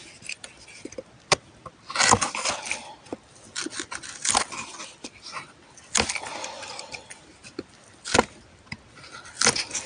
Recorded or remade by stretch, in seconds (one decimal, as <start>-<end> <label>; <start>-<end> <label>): 0.0-9.9 recorded